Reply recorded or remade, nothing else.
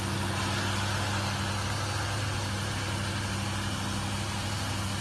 recorded